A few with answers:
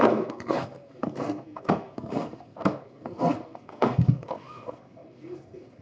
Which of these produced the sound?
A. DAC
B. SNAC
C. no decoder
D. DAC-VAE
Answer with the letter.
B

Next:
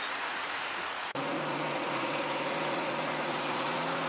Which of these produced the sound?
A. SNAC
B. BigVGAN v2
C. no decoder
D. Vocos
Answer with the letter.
D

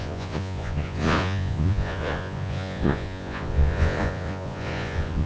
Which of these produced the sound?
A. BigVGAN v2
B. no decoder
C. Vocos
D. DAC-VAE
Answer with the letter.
C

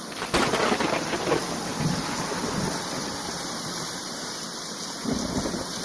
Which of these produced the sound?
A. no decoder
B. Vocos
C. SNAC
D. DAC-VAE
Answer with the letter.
A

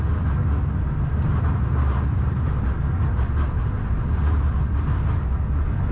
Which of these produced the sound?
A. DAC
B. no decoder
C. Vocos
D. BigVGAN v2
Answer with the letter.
B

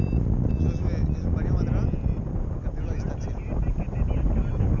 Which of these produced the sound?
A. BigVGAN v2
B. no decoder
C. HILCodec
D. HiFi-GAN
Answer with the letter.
B